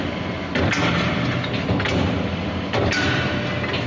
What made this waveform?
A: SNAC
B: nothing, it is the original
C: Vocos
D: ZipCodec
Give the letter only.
B